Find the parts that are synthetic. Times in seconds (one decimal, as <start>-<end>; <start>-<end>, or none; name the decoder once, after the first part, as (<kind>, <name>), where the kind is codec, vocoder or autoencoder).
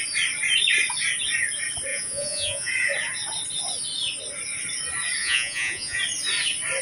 1.9-2.7 (vocoder, Vocos); 5.2-6.0